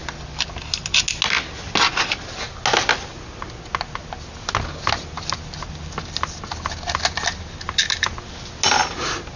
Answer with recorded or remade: recorded